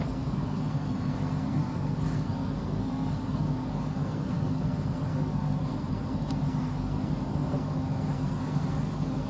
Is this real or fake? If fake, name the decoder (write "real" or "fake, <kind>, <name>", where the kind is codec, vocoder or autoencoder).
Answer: fake, codec, SNAC